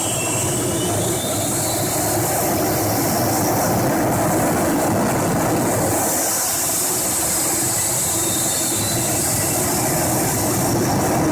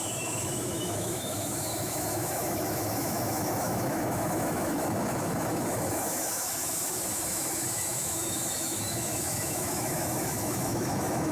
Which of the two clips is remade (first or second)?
second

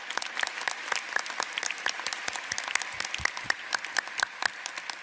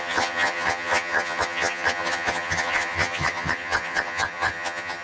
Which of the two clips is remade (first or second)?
second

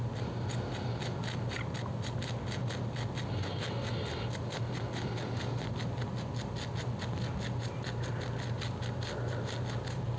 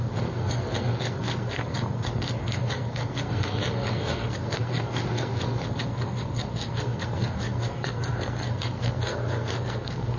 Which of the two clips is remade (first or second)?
second